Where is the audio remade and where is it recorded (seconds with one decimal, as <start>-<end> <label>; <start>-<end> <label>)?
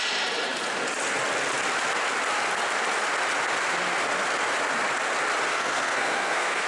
0.0-5.5 recorded; 5.5-6.7 remade